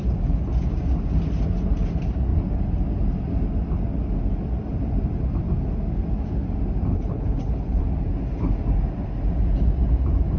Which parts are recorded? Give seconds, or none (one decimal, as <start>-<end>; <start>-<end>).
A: 0.0-6.9; 7.8-10.4